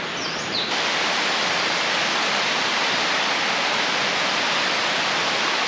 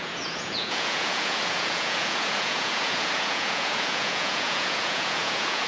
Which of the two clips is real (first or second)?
first